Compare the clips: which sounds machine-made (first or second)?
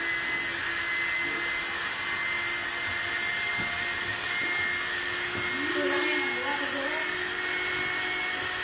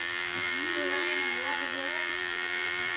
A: second